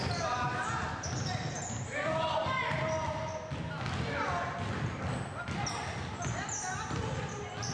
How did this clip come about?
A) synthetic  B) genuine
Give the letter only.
B